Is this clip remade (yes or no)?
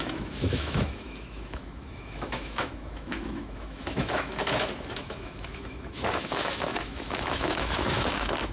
yes